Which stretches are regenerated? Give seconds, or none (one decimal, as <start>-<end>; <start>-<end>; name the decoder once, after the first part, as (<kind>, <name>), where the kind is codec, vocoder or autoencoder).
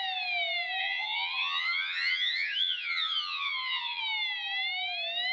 0.8-4.0 (vocoder, HiFi-GAN)